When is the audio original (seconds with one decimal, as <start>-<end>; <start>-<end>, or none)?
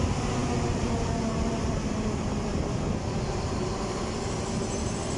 0.0-5.2